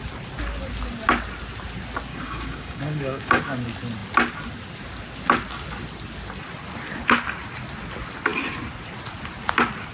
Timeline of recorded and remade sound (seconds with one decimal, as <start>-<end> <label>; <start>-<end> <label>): 0.0-2.1 recorded; 2.1-3.4 remade; 3.4-9.9 recorded